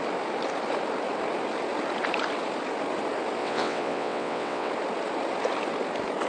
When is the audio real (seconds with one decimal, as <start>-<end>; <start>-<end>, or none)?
0.0-3.4; 4.7-6.3